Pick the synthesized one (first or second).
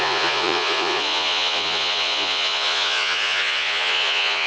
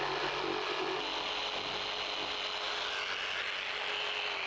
first